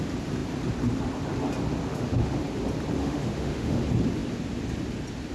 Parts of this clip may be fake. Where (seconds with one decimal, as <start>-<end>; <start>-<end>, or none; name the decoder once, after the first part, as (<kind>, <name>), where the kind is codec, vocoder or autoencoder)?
1.9-2.4 (autoencoder, DAC-VAE); 3.0-3.8

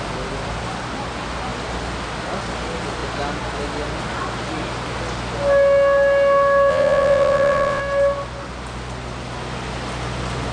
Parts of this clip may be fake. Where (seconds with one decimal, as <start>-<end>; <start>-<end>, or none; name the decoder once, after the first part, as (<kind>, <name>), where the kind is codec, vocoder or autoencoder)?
6.7-7.8 (vocoder, WaveNeXt)

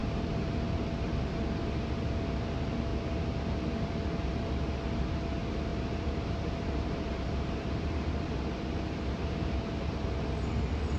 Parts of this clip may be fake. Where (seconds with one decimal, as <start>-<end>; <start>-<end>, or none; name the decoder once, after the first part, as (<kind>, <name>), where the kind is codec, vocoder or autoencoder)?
0.0-0.9 (vocoder, BigVGAN v2); 5.7-8.3

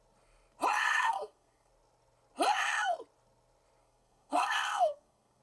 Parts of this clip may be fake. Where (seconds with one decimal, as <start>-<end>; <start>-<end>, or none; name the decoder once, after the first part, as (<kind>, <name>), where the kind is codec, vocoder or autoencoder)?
0.8-1.7 (codec, SNAC); 3.8-5.4

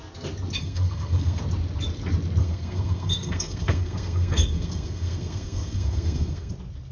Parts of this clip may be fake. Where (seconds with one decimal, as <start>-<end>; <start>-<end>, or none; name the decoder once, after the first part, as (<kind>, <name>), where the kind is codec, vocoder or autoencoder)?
0.6-1.4 (codec, SNAC); 2.4-6.5